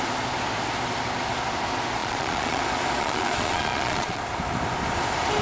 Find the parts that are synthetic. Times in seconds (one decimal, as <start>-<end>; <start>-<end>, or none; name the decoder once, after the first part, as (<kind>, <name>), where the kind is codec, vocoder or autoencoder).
2.0-2.6 (vocoder, Vocos); 3.0-4.2